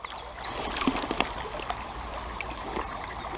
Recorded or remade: recorded